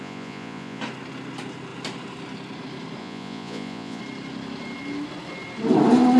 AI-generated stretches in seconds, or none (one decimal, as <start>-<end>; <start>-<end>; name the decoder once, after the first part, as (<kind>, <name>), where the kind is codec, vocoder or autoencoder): 0.0-0.8 (vocoder, Vocos); 3.0-4.0